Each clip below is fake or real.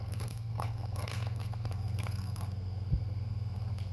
fake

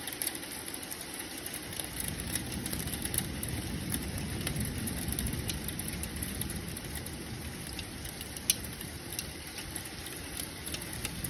real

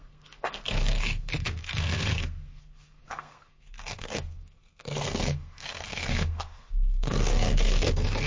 fake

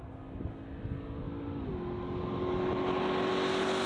real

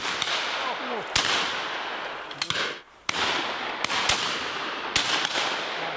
real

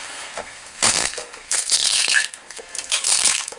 fake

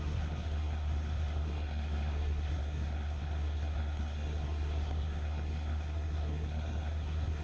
fake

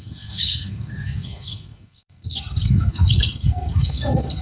fake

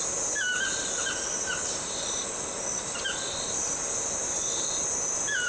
real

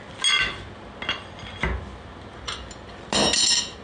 real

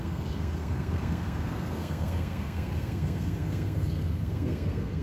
fake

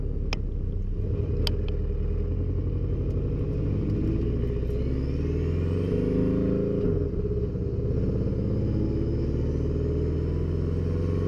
real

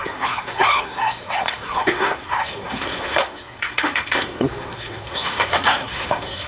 fake